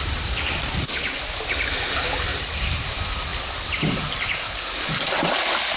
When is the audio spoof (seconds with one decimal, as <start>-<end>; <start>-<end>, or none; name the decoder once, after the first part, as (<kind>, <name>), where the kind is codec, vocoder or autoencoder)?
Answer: none